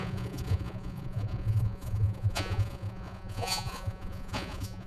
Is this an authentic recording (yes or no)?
no